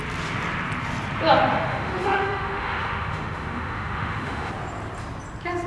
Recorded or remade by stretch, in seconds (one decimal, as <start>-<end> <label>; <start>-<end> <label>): 0.0-1.5 recorded; 1.5-4.5 remade; 4.5-5.7 recorded